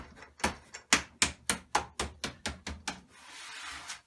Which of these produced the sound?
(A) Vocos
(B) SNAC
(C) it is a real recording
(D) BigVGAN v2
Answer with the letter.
C